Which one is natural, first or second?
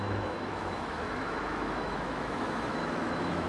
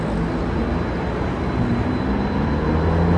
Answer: second